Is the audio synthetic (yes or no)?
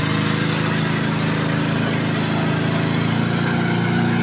no